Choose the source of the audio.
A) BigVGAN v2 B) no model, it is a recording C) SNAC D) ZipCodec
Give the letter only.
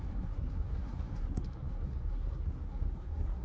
C